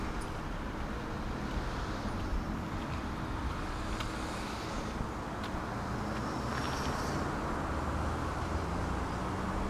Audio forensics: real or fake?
real